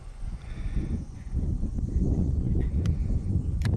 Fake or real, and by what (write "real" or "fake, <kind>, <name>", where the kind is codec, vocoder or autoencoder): fake, vocoder, Vocos